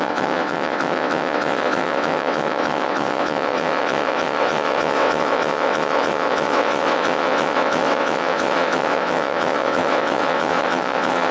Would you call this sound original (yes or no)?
no